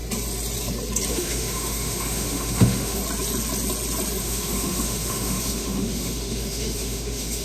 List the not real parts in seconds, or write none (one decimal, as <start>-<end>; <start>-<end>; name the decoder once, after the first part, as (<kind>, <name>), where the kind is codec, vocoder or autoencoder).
1.1-3.0 (autoencoder, DAC-VAE); 4.2-7.4